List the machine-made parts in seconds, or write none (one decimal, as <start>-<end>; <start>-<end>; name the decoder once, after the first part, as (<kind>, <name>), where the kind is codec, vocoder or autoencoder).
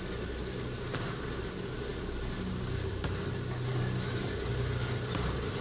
none